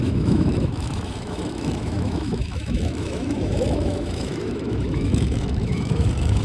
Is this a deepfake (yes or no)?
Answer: yes